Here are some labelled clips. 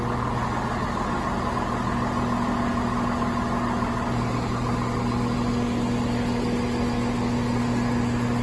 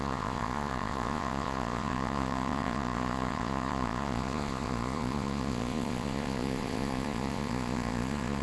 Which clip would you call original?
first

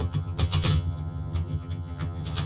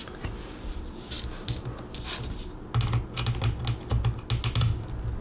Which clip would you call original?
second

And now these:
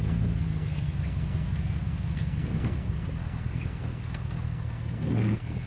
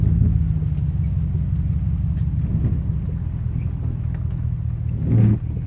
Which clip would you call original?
second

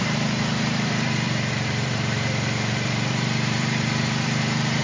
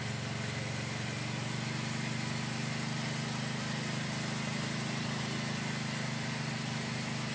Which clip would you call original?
second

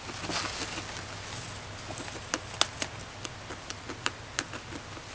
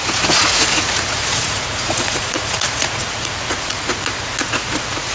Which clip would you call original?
first